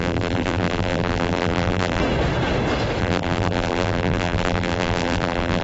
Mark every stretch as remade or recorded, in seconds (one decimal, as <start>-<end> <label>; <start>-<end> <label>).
0.0-2.0 remade; 2.0-3.0 recorded; 3.0-5.6 remade

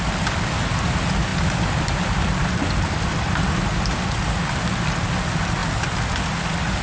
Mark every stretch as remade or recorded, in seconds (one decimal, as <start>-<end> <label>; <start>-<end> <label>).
0.0-1.3 recorded; 1.3-4.0 remade; 4.0-6.8 recorded